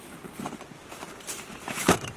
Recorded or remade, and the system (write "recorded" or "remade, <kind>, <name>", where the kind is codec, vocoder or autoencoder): recorded